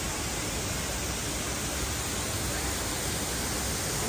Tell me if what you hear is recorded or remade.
recorded